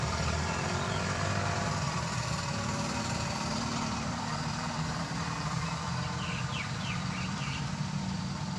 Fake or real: fake